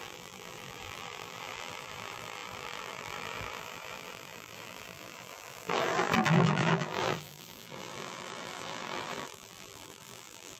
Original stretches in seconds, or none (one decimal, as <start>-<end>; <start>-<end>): none